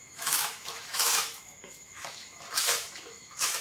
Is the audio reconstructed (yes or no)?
yes